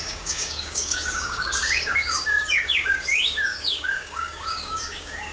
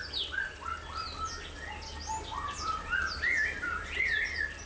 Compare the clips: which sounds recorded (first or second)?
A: second